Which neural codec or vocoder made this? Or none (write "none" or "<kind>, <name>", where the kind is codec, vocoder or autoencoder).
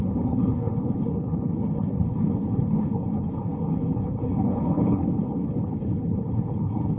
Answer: codec, HILCodec